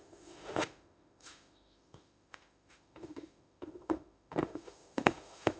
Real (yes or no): no